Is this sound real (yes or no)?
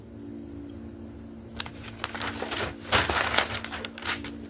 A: yes